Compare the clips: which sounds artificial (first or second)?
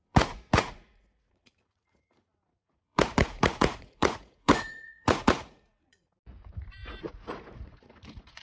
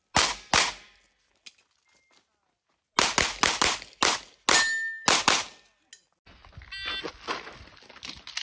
first